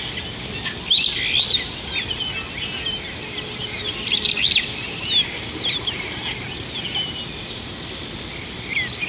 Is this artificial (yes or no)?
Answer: no